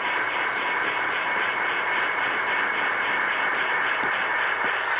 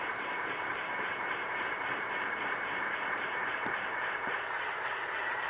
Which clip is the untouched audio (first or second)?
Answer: first